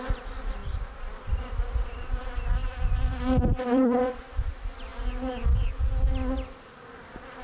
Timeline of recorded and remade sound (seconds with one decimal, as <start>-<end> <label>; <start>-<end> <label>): 0.0-0.6 recorded; 0.6-2.2 remade; 2.2-2.6 recorded; 2.6-4.2 remade; 4.2-7.4 recorded